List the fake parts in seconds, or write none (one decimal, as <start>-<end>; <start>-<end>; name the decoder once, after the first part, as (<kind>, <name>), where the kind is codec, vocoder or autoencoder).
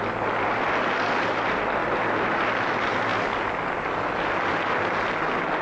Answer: none